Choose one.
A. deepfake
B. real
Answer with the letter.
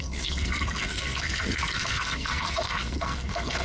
A